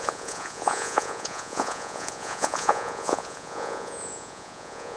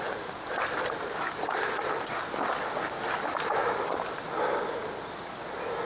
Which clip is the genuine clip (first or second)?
second